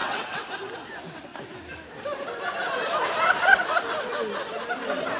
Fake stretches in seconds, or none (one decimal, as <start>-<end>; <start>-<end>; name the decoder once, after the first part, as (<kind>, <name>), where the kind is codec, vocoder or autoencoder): 0.0-0.5 (vocoder, WaveNeXt)